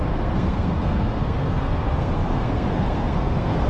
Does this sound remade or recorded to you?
remade